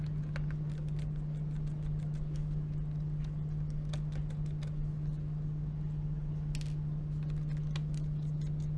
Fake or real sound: real